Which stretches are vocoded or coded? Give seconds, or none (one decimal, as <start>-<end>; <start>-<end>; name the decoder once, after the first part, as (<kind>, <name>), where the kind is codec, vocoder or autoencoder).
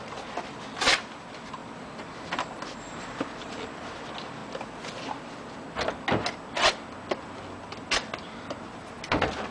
0.0-4.4 (vocoder, BigVGAN v2); 7.6-9.5